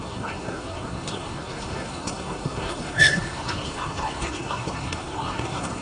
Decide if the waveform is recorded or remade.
remade